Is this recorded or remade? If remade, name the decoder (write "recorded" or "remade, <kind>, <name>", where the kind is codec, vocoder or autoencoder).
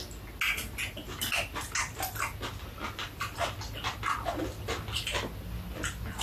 recorded